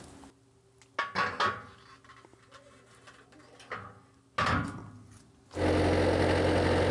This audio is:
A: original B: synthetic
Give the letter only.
A